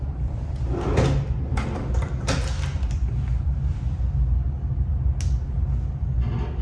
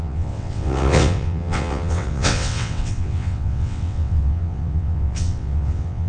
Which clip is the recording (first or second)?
first